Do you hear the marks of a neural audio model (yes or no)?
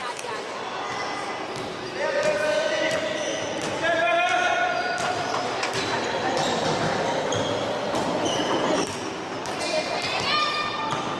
no